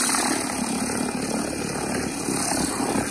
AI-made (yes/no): no